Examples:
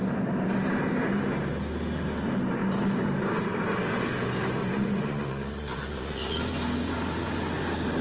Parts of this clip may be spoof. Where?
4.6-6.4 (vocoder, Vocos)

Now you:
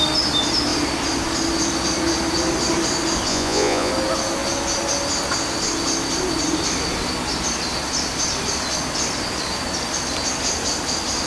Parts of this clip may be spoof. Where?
3.3-3.9 (vocoder, Vocos)

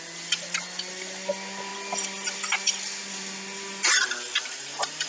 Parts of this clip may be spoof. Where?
none

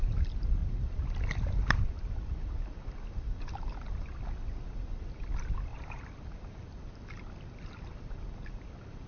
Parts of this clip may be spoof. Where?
none

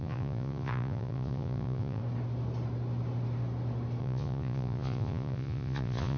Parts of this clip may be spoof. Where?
0.0-2.0 (vocoder, Vocos); 4.0-6.2